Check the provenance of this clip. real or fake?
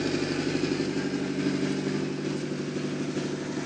real